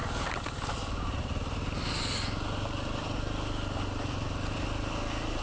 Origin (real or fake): real